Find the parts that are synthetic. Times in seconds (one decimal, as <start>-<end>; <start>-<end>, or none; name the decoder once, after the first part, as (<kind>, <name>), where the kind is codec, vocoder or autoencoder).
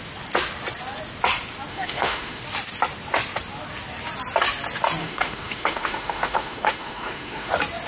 1.7-2.4 (autoencoder, DAC-VAE); 5.0-7.5